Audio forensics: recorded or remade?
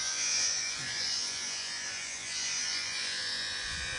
remade